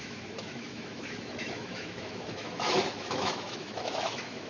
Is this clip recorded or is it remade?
remade